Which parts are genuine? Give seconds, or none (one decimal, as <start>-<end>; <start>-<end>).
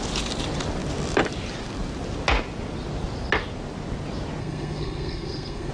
0.0-4.4